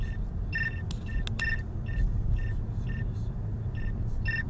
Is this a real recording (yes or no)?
yes